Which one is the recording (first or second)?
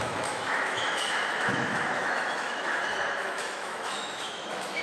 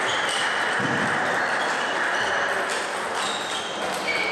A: second